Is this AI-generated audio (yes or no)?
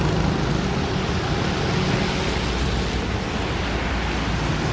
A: no